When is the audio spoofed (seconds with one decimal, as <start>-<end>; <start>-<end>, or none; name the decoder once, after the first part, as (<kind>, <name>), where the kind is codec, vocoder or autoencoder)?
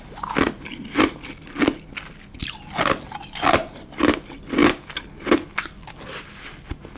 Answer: none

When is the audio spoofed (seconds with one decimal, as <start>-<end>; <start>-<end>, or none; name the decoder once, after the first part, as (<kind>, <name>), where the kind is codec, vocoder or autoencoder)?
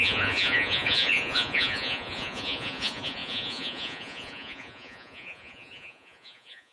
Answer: 0.0-6.7 (vocoder, Vocos)